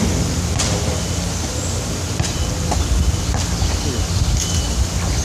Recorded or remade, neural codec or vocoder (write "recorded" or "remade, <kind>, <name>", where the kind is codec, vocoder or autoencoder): recorded